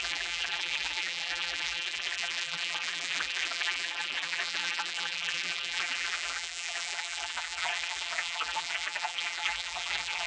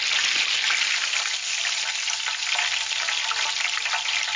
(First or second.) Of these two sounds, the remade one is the first